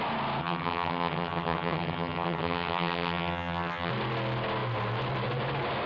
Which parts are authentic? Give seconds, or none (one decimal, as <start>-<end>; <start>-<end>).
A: 0.0-0.4; 3.9-5.9